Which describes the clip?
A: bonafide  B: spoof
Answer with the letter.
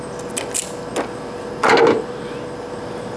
A